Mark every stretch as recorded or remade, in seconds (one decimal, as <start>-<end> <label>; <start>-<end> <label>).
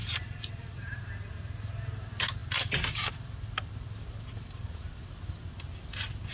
0.0-1.1 remade; 1.1-6.3 recorded